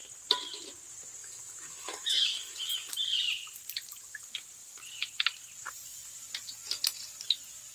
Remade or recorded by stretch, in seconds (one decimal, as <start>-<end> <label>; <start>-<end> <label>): 0.0-1.2 recorded; 1.2-2.9 remade; 2.9-7.7 recorded